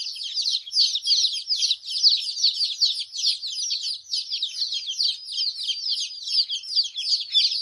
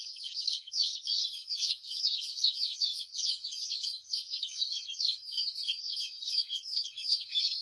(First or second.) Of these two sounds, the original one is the first